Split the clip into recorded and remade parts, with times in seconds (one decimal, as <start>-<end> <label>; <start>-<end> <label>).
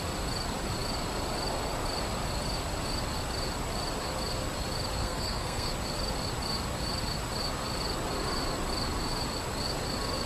0.0-5.0 recorded; 5.0-5.7 remade; 5.7-10.3 recorded